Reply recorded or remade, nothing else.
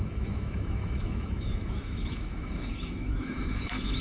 remade